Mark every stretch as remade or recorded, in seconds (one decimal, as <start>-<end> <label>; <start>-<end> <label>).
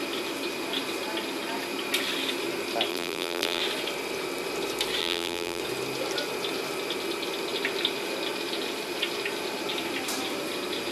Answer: 0.0-2.9 recorded; 2.9-3.6 remade; 3.6-5.0 recorded; 5.0-5.6 remade; 5.6-10.9 recorded